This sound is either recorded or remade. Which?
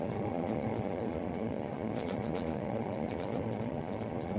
remade